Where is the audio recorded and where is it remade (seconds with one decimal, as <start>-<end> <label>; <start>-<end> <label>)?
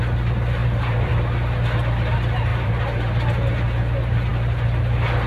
0.0-0.6 recorded; 0.6-1.2 remade; 1.2-2.5 recorded; 2.5-3.1 remade; 3.1-5.3 recorded